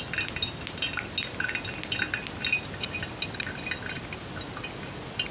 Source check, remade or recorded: recorded